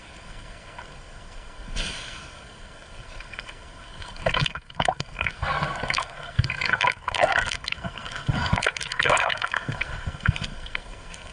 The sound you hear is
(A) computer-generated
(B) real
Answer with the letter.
A